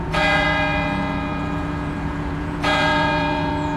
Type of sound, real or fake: fake